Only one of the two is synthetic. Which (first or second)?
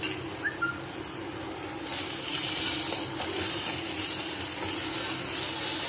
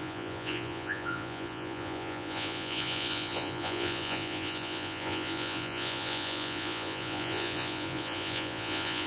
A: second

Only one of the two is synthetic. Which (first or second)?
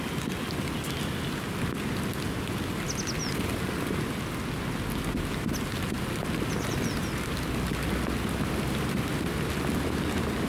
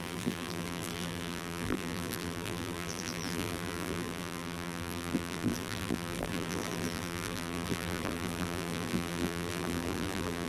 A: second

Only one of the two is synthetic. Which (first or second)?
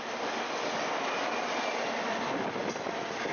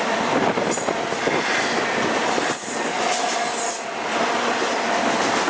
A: first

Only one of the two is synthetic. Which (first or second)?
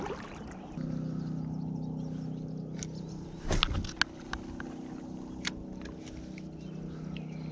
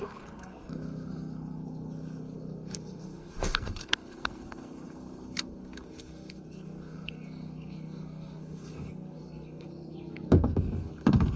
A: second